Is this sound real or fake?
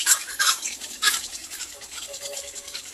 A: fake